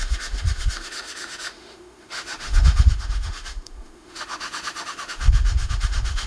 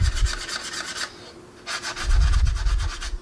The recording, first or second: second